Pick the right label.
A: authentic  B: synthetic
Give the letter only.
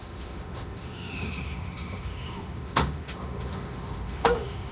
B